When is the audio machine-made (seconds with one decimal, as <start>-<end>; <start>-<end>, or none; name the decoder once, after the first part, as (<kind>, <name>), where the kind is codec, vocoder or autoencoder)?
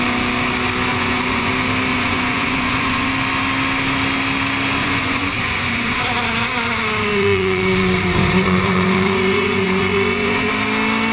0.9-1.5 (vocoder, Vocos); 1.9-3.1; 4.8-6.1; 7.1-10.5